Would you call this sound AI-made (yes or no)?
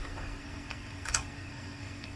yes